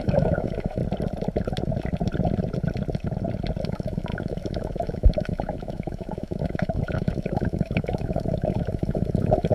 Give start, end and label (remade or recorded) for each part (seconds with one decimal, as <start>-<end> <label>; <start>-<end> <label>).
0.0-0.8 remade; 0.8-3.6 recorded; 3.6-9.5 remade